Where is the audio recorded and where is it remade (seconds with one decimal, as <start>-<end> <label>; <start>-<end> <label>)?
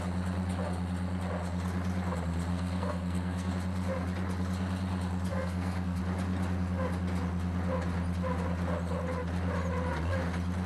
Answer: 0.0-2.5 recorded; 2.5-3.5 remade; 3.5-5.3 recorded; 5.3-6.0 remade; 6.0-10.7 recorded